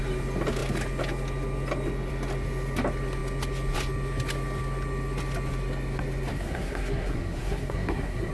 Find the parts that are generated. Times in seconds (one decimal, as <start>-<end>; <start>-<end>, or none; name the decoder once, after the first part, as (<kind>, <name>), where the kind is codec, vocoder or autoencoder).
6.3-8.3 (codec, SNAC)